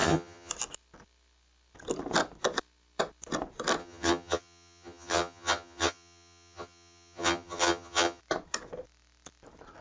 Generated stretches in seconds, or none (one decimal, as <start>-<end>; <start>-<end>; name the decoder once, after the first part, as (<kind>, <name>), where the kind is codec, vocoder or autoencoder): 0.0-0.5 (vocoder, HiFi-GAN); 3.8-8.2